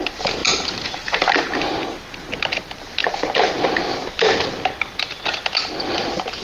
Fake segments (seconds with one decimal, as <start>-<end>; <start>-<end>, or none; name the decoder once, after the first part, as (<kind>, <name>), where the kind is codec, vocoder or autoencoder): none